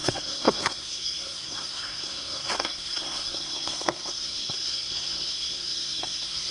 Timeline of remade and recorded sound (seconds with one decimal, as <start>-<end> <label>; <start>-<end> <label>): 0.0-6.5 remade